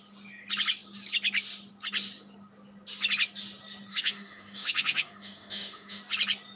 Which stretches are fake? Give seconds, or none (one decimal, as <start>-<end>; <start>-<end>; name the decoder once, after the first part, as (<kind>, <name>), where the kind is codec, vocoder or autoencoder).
3.9-6.0 (autoencoder, DAC-VAE)